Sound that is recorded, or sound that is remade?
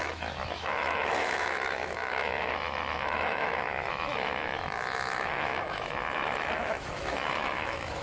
remade